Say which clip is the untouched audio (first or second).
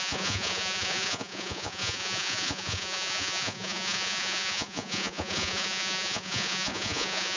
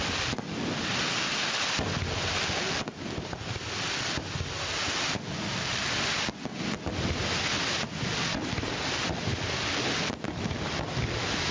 second